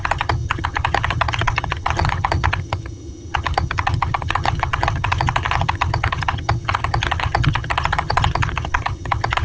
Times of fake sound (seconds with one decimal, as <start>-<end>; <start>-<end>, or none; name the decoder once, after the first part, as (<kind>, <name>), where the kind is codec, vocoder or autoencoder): 0.0-9.4 (vocoder, HiFi-GAN)